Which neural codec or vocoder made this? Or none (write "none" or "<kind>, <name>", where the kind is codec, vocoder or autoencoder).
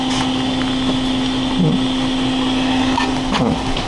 none